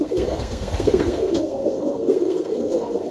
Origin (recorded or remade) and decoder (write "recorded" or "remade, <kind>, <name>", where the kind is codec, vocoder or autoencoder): remade, codec, SNAC